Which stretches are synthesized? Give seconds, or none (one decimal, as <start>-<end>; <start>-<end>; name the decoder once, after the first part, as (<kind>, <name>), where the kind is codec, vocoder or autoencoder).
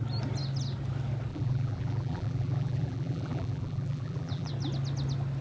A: 1.3-4.5 (vocoder, BigVGAN v2)